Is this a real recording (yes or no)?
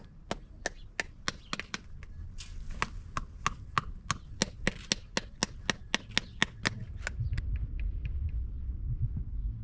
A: yes